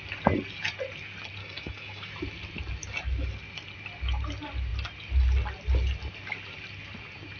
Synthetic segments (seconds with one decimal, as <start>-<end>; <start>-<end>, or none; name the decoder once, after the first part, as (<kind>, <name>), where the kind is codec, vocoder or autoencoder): 1.4-2.1 (codec, DAC)